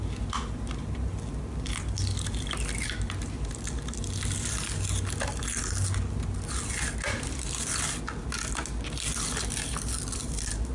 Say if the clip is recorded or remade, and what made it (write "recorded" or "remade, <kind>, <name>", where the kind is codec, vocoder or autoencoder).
recorded